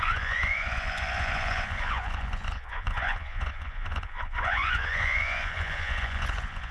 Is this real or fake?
fake